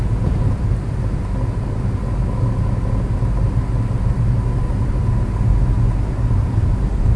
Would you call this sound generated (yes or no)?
no